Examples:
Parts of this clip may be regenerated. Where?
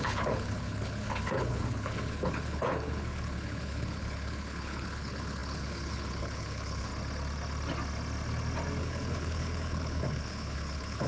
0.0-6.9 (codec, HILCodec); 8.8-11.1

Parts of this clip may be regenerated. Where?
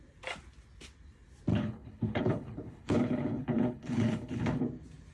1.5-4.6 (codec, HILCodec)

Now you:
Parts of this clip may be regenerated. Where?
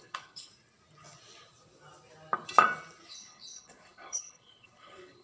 0.0-0.5 (codec, HILCodec); 3.1-5.2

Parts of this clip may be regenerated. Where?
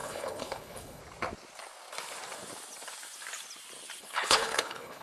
0.0-1.0 (codec, HILCodec); 4.0-5.0